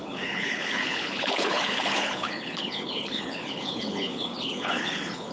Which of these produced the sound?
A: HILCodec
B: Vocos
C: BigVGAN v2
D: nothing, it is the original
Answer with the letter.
A